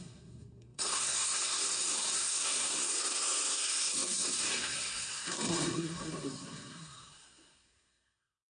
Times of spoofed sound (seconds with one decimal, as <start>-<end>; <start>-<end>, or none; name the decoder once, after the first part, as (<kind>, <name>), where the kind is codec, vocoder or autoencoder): 0.0-8.5 (codec, SNAC)